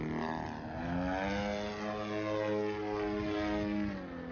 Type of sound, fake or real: real